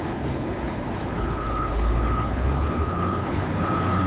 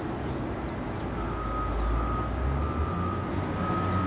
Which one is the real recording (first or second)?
second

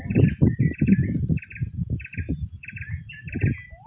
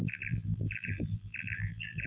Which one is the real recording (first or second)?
first